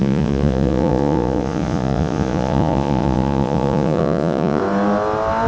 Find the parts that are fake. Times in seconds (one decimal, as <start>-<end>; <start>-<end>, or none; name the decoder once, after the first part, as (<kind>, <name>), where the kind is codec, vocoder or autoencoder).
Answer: 0.0-4.6 (vocoder, Vocos)